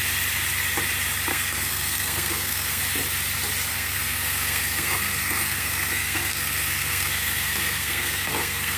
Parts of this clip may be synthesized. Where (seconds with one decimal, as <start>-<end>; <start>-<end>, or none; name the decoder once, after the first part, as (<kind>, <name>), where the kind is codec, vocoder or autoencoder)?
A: 1.3-2.8 (codec, SNAC); 3.7-8.8